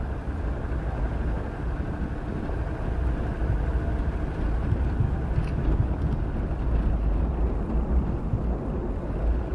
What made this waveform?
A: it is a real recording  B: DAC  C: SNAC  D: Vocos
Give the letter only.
A